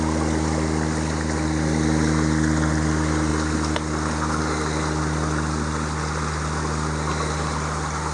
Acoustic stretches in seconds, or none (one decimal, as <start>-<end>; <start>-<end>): 0.0-8.1